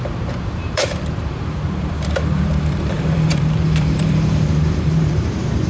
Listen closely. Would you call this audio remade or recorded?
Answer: remade